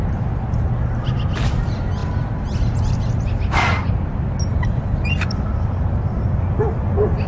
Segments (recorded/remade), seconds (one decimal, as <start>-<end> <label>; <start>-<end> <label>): 0.0-7.3 recorded